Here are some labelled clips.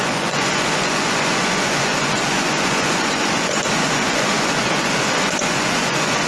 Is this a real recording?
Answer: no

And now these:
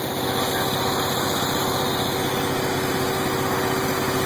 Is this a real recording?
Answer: yes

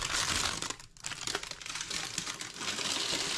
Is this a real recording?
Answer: yes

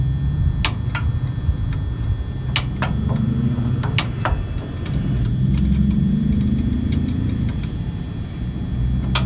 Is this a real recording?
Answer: yes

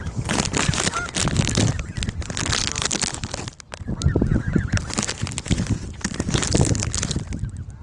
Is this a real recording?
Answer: yes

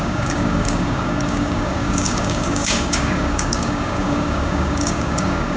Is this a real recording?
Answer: no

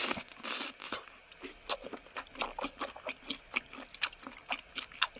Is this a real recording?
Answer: yes